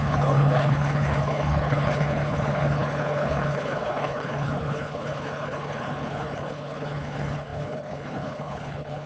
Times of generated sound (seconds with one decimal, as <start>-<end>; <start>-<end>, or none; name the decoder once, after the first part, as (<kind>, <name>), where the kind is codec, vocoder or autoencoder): 0.0-9.1 (codec, HILCodec)

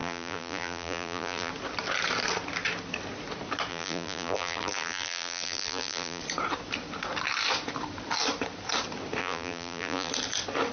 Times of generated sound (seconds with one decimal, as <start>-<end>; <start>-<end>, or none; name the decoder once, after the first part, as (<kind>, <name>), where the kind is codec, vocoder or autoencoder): 0.0-1.5 (vocoder, BigVGAN v2); 3.7-6.2; 9.2-10.1

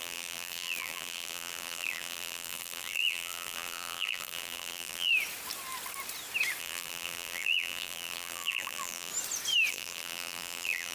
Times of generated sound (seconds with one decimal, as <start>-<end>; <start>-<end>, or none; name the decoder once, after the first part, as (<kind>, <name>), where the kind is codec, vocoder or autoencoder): 0.0-5.1 (vocoder, BigVGAN v2); 6.6-9.1; 9.7-10.9

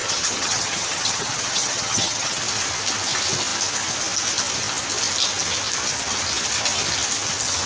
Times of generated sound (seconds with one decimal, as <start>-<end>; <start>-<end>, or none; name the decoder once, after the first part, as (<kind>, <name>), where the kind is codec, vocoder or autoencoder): 0.0-2.4 (vocoder, HiFi-GAN)

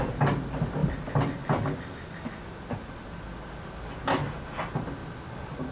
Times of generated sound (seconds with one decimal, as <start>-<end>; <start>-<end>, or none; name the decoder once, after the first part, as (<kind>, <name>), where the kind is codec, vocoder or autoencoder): none

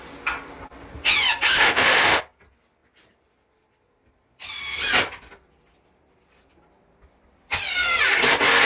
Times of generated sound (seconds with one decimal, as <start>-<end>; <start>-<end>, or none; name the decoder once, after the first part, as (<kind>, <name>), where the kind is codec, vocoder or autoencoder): 1.5-2.2 (autoencoder, DAC-VAE)